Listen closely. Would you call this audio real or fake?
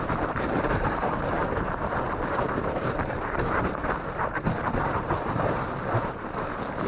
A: fake